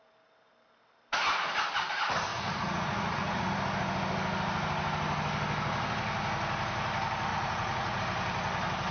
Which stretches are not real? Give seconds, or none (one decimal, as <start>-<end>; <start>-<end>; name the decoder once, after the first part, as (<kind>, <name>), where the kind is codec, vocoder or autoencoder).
2.3-3.5 (vocoder, Vocos); 7.3-8.0